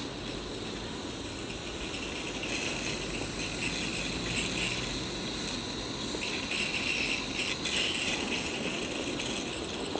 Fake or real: real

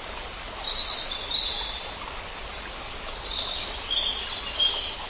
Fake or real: real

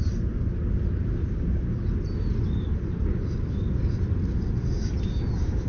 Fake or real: real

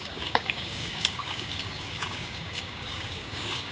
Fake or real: fake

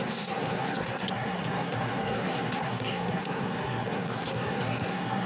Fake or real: fake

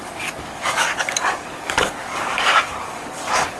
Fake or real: fake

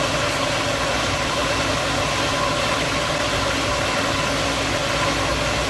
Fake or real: real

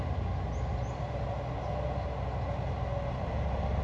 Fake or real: real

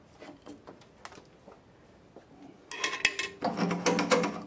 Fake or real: real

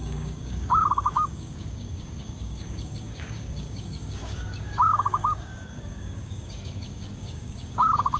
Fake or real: fake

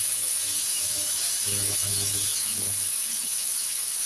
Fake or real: fake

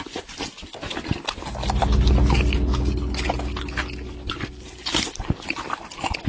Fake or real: real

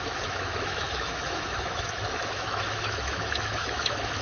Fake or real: fake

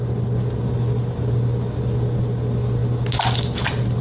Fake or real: real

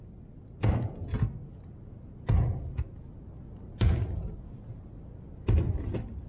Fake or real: real